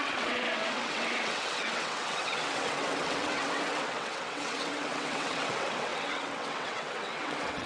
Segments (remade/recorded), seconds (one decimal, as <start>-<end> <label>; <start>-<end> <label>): 0.0-7.7 remade